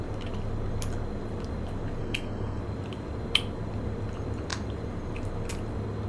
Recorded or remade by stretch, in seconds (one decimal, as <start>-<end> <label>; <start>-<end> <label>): 0.0-2.0 recorded; 2.0-2.6 remade; 2.6-6.1 recorded